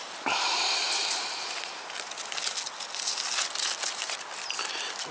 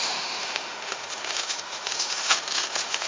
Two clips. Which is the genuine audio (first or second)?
first